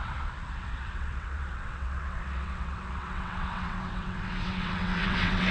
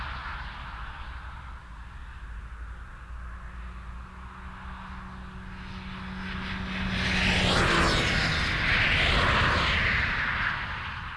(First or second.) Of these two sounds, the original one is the second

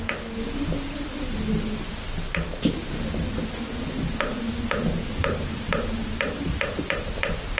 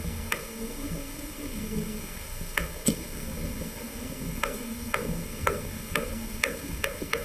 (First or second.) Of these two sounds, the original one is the first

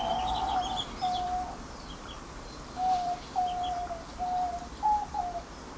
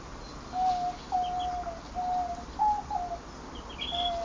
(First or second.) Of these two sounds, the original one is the second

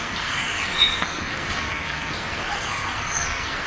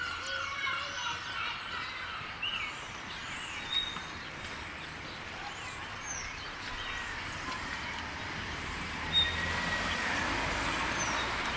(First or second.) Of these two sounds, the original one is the second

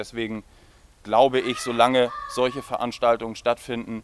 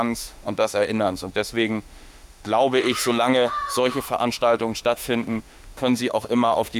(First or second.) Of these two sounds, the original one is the first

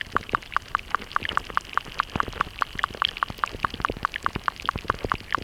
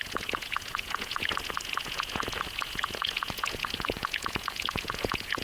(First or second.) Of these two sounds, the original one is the first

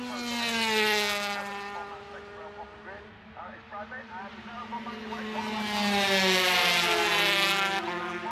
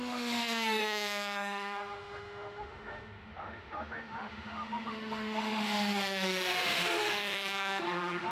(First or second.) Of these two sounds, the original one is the first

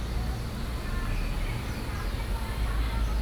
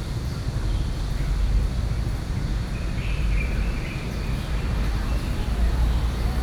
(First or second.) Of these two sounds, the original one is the first